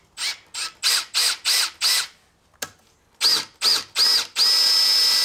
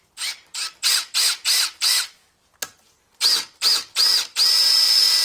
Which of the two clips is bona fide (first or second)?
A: first